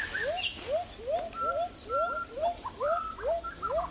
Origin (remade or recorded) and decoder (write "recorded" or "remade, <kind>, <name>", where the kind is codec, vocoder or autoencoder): recorded